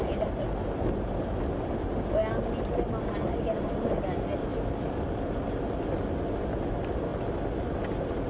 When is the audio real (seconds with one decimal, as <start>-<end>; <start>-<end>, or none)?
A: 0.0-8.3